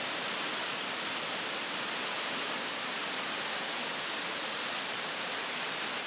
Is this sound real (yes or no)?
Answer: yes